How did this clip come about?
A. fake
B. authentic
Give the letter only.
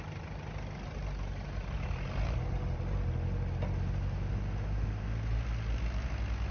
B